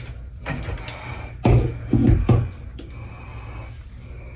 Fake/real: real